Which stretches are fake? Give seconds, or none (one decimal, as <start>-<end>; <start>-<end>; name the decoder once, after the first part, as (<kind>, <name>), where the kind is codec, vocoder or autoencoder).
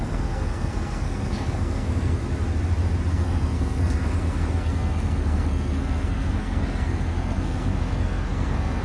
0.0-2.2 (codec, SNAC); 3.1-8.8